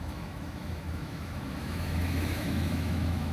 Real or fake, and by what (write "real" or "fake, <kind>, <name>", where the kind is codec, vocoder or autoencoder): fake, autoencoder, DAC-VAE